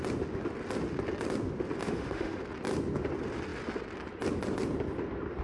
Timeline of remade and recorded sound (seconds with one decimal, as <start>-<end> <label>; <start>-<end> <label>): 0.0-1.8 recorded; 1.8-2.4 remade; 2.4-5.4 recorded